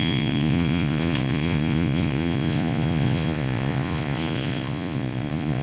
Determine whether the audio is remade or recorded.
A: remade